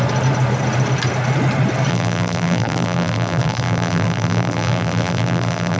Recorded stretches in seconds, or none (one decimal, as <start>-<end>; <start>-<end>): 0.0-1.9